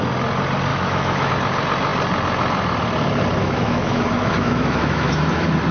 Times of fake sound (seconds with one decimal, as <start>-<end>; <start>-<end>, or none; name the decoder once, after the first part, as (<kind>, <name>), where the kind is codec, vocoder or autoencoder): 0.7-1.3 (autoencoder, DAC-VAE); 3.4-5.1